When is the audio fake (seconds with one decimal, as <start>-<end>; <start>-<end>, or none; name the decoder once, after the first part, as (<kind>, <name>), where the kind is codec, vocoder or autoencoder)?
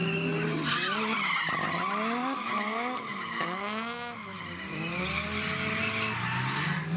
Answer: 2.2-4.4 (autoencoder, DAC-VAE)